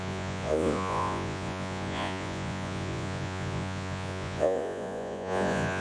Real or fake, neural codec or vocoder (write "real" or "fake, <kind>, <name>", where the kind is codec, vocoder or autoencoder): fake, vocoder, Vocos